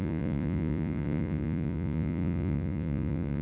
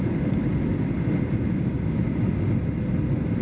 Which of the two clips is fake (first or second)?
first